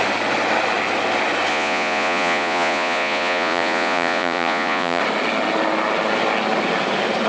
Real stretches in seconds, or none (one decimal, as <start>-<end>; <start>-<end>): 0.0-1.5; 5.0-7.3